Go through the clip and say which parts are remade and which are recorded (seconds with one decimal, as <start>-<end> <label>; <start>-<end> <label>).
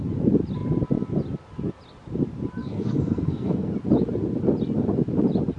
0.0-2.6 recorded; 2.6-3.7 remade; 3.7-5.6 recorded